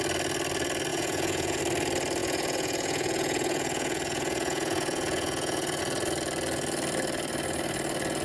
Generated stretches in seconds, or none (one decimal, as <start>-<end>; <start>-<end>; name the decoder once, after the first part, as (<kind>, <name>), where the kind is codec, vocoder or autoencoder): 0.9-1.6 (vocoder, Vocos); 2.2-5.8